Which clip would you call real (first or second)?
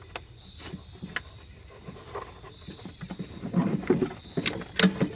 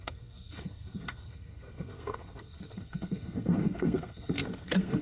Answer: first